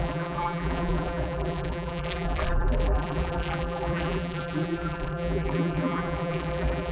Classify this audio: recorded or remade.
remade